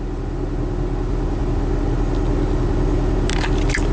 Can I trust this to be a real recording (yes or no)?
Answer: yes